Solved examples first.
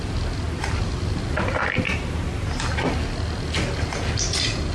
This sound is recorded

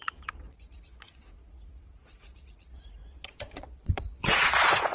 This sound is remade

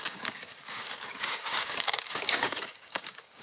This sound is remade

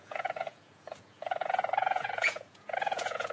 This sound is remade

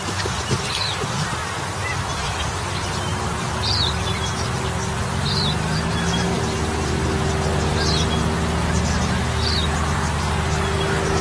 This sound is recorded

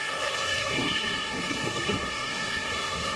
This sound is remade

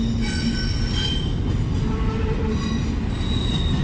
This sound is recorded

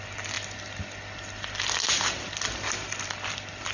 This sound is recorded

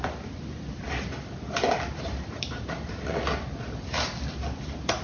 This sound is recorded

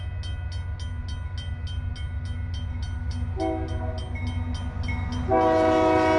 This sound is recorded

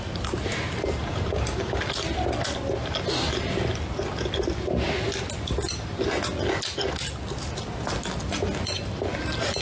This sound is recorded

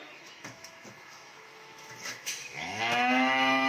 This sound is remade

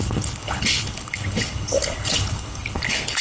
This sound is remade